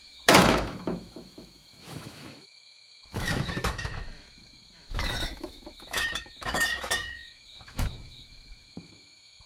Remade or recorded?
remade